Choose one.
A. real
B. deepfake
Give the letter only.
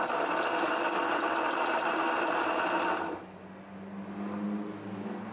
A